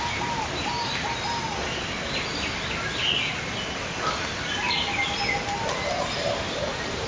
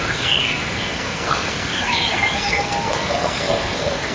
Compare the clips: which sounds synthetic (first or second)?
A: second